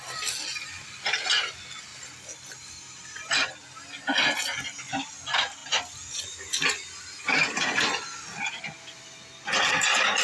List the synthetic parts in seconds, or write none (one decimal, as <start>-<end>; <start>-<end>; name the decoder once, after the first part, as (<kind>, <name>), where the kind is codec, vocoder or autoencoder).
none